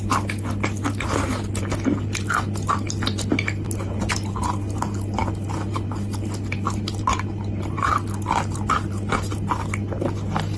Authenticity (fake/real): real